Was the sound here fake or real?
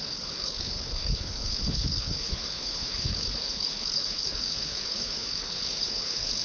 fake